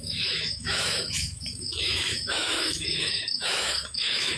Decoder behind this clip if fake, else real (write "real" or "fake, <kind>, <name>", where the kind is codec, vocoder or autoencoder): fake, autoencoder, DAC-VAE